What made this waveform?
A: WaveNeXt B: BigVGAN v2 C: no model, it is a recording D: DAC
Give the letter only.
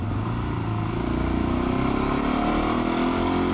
C